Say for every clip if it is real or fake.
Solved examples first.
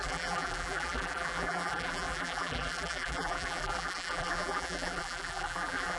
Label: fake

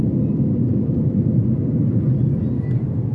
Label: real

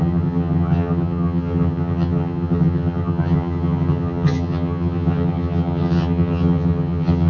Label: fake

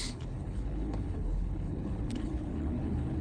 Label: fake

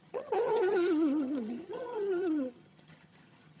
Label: fake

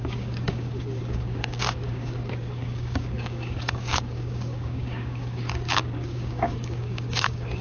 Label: fake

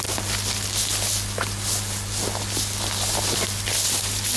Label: real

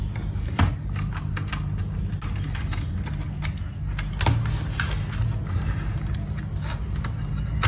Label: real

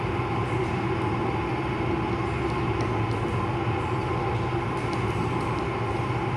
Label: real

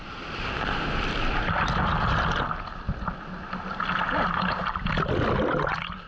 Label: real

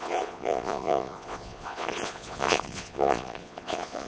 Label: fake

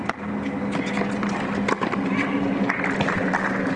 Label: real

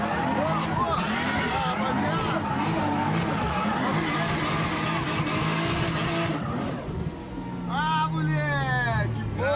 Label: real